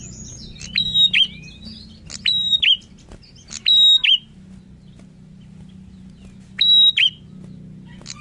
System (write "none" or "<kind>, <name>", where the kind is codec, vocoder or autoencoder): none